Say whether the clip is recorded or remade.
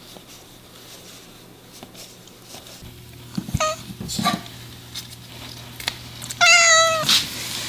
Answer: recorded